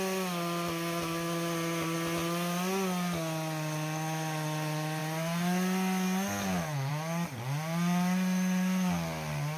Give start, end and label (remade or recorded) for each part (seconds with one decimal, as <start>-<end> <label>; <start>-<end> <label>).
0.0-9.6 recorded